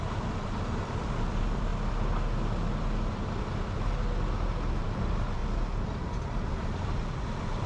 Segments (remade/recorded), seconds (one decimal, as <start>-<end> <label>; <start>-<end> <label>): 0.0-1.7 remade; 1.7-4.8 recorded; 4.8-5.4 remade; 5.4-6.2 recorded; 6.2-7.7 remade